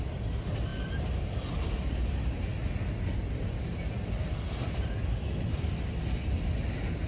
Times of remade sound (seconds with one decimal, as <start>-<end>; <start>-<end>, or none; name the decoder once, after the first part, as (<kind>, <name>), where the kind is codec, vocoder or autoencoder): none